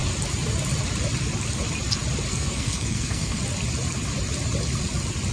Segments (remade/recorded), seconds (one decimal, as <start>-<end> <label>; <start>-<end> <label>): 0.0-2.3 recorded; 2.3-3.4 remade; 3.4-5.3 recorded